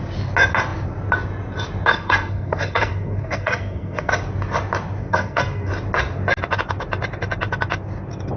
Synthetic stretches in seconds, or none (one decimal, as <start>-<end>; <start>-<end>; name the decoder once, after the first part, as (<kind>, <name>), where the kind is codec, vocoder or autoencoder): 1.9-4.1 (codec, SNAC); 5.0-5.7